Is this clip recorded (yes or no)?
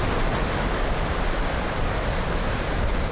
yes